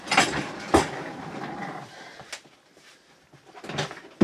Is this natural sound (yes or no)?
yes